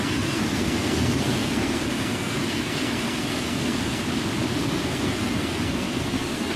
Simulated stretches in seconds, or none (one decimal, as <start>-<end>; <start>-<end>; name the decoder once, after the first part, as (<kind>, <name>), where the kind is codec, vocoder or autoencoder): 0.0-4.0 (codec, SNAC); 4.6-6.6